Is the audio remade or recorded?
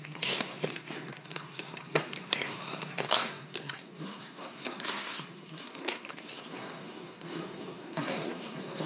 remade